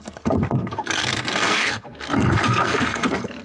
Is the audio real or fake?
fake